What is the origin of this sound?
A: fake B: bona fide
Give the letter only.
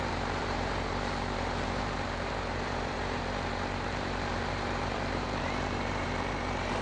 A